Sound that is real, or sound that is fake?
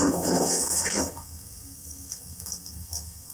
fake